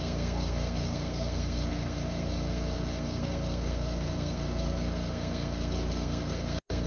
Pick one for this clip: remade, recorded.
remade